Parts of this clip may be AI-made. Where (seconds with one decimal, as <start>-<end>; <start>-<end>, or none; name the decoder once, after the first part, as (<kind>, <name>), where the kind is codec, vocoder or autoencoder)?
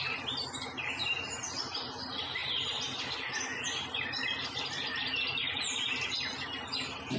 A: 0.0-1.0 (vocoder, BigVGAN v2); 2.0-7.2